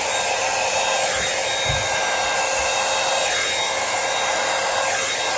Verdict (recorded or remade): recorded